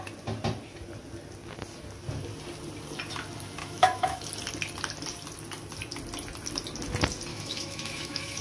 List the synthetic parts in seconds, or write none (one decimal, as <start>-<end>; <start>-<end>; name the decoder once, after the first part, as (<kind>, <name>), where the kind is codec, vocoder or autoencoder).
3.6-4.3 (autoencoder, DAC-VAE); 7.3-8.4